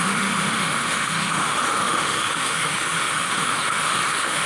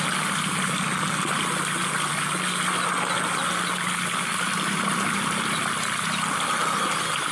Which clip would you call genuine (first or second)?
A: second